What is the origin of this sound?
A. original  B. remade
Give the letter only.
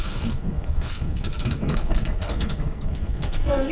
B